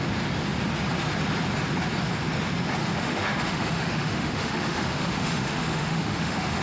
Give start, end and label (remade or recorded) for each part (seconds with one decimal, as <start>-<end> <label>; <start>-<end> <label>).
0.0-2.8 recorded; 2.8-6.6 remade